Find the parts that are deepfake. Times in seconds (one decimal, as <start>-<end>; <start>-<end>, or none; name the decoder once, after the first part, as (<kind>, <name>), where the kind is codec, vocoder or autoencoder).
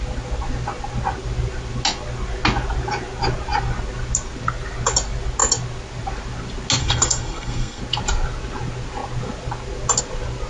6.8-7.8 (codec, SNAC)